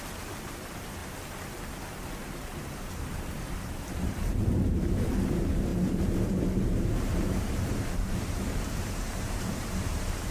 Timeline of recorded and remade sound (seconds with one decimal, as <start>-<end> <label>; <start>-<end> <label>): 0.0-1.0 remade; 1.0-2.2 recorded; 2.2-10.3 remade